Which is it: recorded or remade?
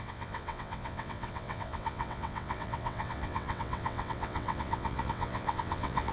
remade